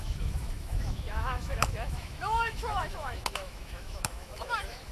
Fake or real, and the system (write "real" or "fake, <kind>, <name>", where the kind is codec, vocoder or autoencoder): fake, autoencoder, DAC-VAE